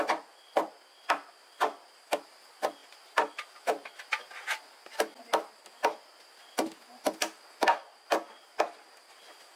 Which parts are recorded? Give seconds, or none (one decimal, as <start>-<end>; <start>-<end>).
0.0-2.8; 3.8-9.6